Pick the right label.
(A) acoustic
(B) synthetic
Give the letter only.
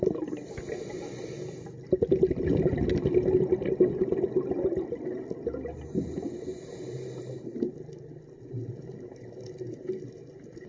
A